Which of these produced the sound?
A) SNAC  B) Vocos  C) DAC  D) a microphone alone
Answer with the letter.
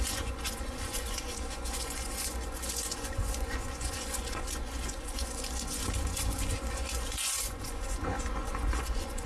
B